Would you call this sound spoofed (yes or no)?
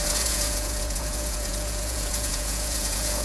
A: yes